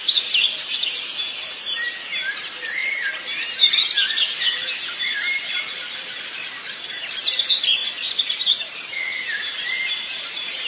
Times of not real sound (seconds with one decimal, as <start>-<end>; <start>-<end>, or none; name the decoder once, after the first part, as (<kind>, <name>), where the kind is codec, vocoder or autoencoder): 0.0-10.7 (vocoder, BigVGAN v2)